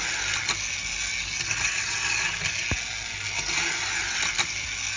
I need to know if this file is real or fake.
real